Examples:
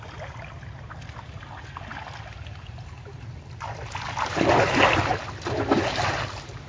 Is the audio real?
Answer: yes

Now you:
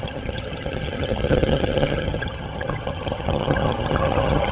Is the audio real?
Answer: no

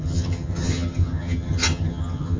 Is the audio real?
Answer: no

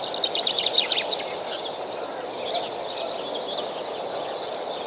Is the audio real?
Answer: yes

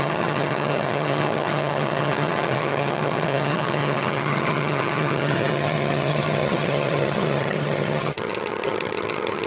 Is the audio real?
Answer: no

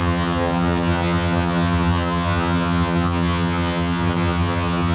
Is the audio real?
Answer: no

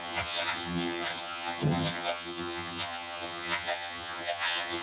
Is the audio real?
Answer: no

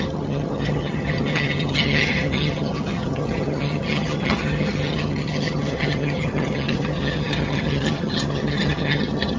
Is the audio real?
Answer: no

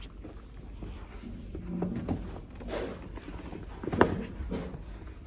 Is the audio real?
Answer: yes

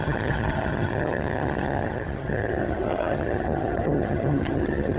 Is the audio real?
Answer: no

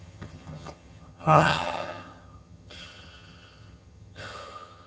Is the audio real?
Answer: no